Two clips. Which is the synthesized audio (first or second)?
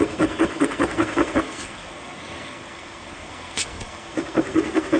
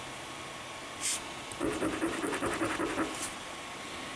first